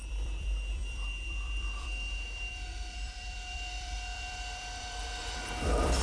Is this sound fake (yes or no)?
yes